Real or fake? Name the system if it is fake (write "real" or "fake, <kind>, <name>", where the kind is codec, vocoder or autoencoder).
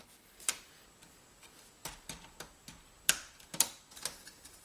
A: real